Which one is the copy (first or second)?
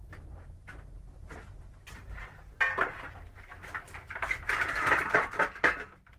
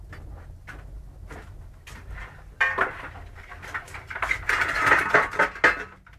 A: first